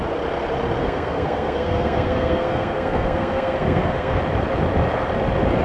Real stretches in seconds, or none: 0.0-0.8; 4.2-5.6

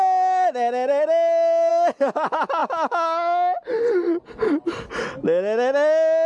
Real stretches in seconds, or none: 0.0-6.3

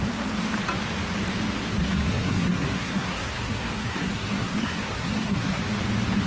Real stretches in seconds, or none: 0.0-1.8; 5.6-6.3

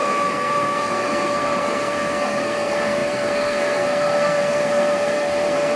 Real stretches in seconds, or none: none

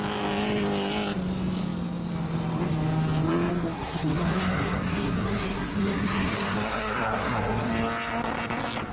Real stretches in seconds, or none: 0.0-3.5; 7.7-8.9

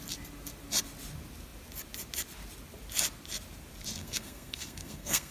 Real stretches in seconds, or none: 0.0-4.0